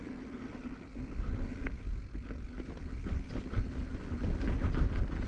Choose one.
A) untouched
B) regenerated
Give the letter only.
A